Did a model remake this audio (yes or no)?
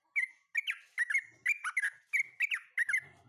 no